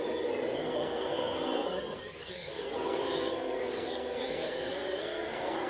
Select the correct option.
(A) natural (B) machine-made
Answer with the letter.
B